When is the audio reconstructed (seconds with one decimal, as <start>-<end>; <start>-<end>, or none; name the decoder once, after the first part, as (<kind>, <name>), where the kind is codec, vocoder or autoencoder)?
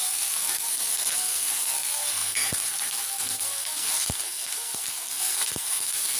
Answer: 0.0-6.2 (codec, SNAC)